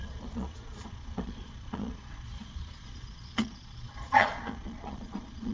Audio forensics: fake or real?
fake